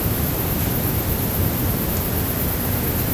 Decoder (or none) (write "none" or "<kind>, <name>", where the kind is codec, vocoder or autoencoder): none